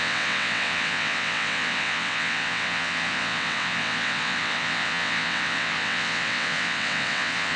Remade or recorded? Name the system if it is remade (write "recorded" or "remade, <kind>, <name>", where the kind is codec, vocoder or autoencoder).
remade, vocoder, WaveNeXt